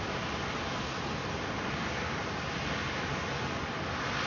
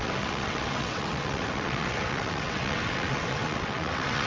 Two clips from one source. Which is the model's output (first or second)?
second